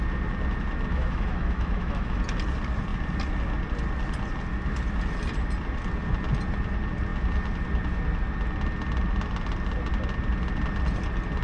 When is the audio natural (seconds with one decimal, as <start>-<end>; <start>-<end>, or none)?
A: 0.0-0.9; 2.2-11.4